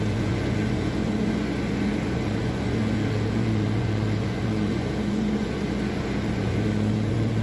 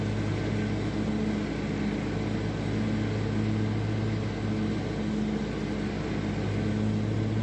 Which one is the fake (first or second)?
first